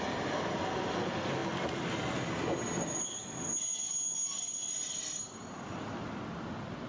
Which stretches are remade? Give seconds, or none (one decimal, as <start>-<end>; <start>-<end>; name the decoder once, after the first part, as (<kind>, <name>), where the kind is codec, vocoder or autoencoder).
none